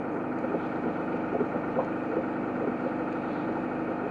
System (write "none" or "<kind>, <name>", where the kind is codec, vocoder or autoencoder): none